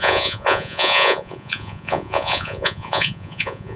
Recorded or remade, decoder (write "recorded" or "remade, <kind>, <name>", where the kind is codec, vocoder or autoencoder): remade, vocoder, Vocos